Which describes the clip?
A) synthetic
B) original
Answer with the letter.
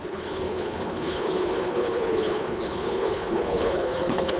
A